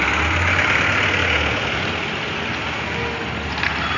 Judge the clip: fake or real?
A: real